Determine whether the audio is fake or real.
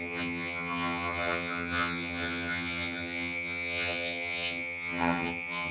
fake